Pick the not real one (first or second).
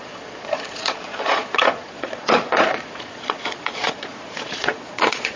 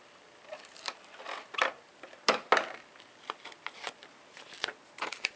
first